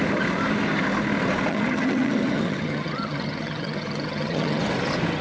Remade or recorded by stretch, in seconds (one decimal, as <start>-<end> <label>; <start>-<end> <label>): 0.0-1.5 recorded; 1.5-4.6 remade; 4.6-5.2 recorded